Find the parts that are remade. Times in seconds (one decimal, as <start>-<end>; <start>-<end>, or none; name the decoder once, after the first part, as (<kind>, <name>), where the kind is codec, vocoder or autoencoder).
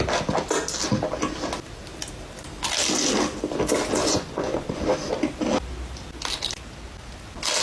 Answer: 4.0-4.8 (vocoder, Vocos)